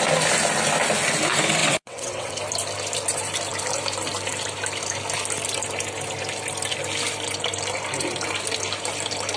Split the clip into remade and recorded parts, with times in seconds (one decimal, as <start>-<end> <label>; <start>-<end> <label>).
0.0-1.6 recorded; 1.6-2.3 remade; 2.3-9.4 recorded